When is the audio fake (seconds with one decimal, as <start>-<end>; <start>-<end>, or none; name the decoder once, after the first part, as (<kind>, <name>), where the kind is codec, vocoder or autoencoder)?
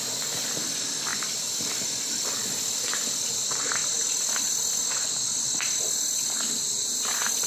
0.0-1.1 (vocoder, BigVGAN v2); 1.7-3.8; 6.8-7.5